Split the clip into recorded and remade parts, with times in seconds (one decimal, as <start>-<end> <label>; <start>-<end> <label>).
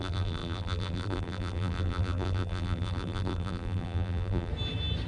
0.0-4.5 remade; 4.5-5.1 recorded